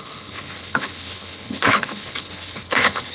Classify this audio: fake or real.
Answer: fake